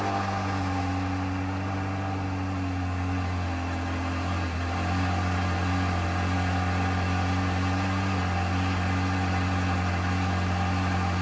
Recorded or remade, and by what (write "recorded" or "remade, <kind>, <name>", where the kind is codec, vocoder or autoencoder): recorded